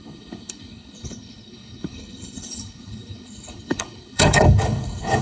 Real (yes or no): no